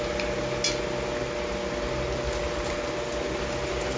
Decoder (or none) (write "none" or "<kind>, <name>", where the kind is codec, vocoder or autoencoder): none